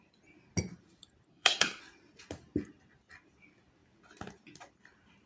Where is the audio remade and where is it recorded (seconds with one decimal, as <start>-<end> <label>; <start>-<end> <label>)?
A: 0.0-1.3 recorded; 1.3-1.8 remade; 1.8-5.3 recorded